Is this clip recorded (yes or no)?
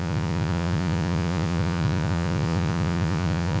no